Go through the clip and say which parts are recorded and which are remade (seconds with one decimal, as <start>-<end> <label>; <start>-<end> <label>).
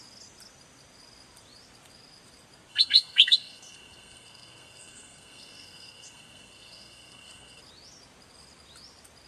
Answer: 0.0-2.7 recorded; 2.7-7.6 remade; 7.6-9.3 recorded